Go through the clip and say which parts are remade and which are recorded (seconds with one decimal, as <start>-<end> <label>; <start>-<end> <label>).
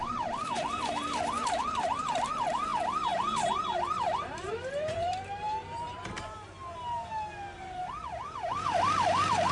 0.0-9.5 remade